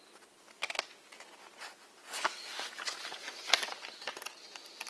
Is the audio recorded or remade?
recorded